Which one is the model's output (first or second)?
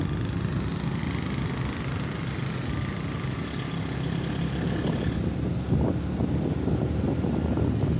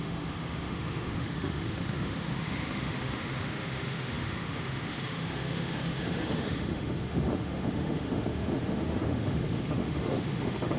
second